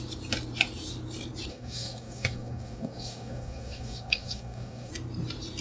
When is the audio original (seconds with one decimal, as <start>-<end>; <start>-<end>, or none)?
0.0-1.5; 4.9-5.6